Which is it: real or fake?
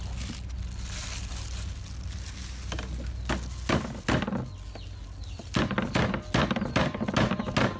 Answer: real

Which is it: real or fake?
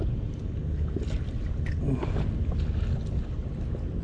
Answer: real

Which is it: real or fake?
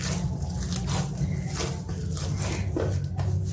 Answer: real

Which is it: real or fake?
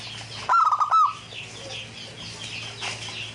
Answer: real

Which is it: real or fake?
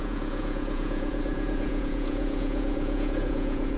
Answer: fake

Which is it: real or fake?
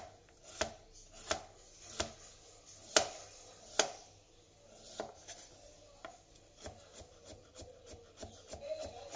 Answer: real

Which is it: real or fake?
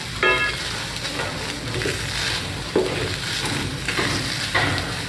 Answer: real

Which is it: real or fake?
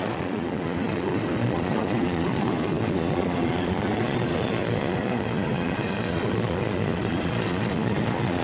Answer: fake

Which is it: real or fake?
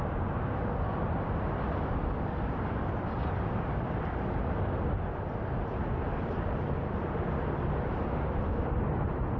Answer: real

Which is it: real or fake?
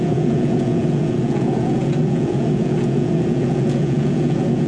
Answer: fake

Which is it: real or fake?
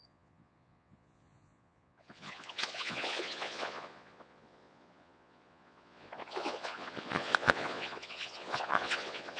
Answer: fake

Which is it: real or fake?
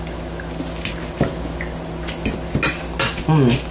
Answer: real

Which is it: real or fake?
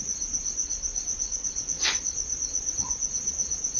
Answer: fake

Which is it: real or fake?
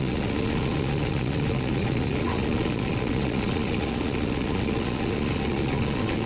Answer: fake